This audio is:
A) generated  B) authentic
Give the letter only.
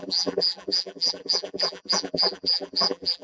A